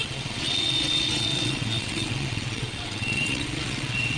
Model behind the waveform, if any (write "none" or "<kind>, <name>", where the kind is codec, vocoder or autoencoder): vocoder, WaveNeXt